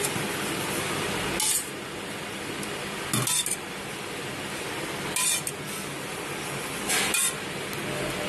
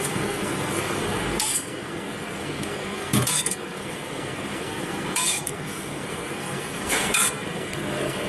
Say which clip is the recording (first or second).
first